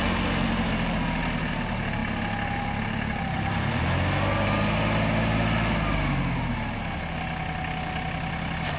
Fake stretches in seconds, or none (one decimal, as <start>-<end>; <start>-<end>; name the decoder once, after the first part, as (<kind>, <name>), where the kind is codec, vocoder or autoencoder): none